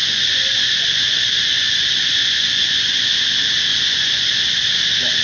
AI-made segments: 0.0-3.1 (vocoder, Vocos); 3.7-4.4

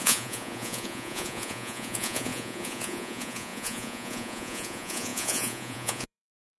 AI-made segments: 0.0-6.6 (vocoder, Vocos)

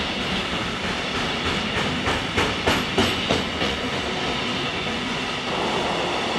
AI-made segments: 3.0-4.0 (vocoder, Vocos); 4.7-5.3